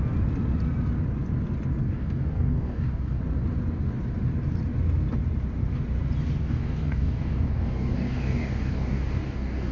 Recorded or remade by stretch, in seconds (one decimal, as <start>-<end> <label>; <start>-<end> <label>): 0.0-1.8 recorded; 1.8-3.2 remade; 3.2-6.4 recorded; 6.4-9.7 remade